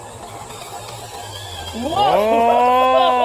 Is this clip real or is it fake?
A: real